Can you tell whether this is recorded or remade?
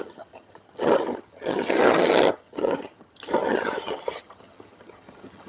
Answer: remade